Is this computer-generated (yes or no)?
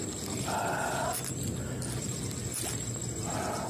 no